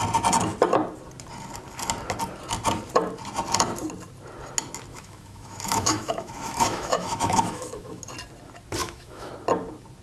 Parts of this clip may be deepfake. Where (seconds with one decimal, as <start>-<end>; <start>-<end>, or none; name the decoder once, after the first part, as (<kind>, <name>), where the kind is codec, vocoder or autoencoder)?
4.9-8.0 (autoencoder, DAC-VAE); 8.8-9.3